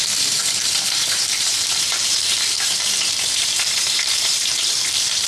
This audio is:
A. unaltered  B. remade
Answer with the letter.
B